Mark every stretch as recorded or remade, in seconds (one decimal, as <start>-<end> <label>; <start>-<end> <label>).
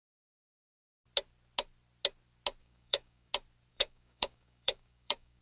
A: 0.0-2.6 recorded; 2.6-3.3 remade; 3.3-3.7 recorded; 3.7-5.4 remade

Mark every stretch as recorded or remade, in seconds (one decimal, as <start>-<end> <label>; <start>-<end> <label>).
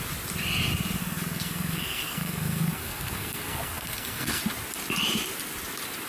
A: 0.0-1.0 recorded; 1.0-4.4 remade; 4.4-6.1 recorded